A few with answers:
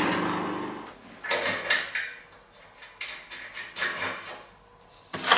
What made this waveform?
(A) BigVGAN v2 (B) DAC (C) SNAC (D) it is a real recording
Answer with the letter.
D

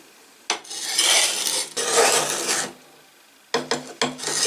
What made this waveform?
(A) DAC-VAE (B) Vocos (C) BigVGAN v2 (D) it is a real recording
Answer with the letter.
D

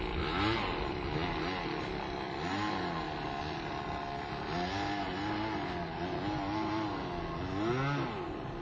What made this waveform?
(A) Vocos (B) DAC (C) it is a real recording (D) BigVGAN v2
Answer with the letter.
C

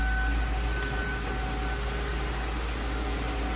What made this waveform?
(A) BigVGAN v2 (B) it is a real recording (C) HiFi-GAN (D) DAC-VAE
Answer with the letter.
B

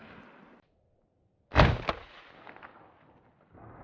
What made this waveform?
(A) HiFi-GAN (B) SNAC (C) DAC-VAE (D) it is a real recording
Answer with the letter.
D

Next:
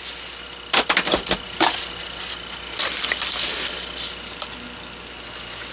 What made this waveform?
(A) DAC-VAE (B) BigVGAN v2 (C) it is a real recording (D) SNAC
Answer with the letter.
C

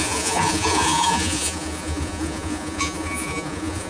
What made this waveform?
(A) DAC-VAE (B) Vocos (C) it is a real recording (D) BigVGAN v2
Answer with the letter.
B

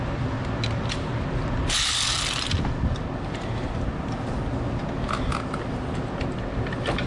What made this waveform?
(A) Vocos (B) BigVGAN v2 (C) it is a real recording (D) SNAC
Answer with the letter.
C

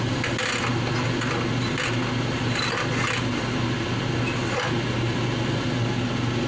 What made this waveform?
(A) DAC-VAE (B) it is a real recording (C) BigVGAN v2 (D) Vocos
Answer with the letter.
B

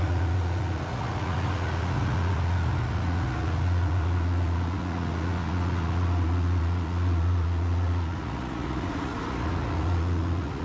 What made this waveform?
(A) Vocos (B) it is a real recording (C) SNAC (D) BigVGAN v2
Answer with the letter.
A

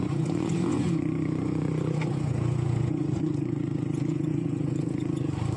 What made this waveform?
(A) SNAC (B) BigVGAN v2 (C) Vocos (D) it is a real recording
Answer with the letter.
C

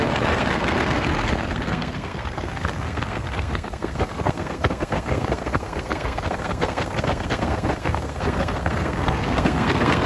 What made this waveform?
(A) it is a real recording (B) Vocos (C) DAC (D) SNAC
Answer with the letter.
D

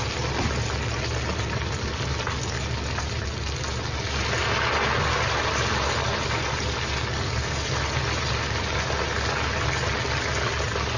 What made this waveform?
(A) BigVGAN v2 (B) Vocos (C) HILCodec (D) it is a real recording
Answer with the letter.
D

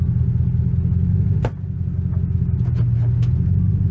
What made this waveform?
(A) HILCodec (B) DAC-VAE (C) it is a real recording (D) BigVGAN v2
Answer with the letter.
C